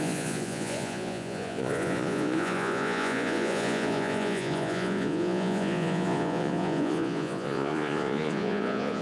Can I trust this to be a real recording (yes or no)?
no